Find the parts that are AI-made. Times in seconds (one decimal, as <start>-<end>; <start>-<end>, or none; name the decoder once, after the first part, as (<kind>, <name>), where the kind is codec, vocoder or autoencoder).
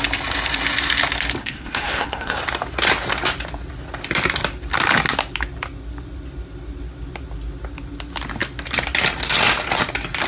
1.4-2.4 (codec, SNAC)